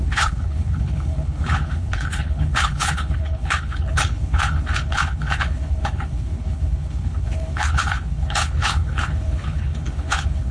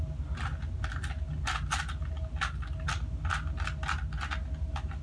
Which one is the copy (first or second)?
first